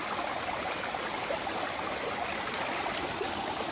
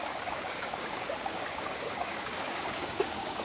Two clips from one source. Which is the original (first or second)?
first